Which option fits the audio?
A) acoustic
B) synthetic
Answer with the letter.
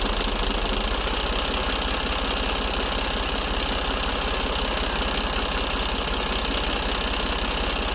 A